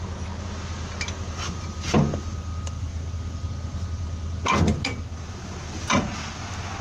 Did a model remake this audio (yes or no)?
no